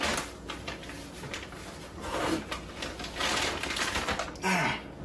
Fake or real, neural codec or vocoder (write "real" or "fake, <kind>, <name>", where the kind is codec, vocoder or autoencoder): real